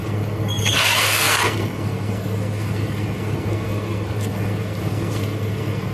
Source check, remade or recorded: remade